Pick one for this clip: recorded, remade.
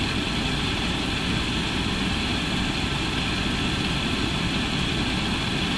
remade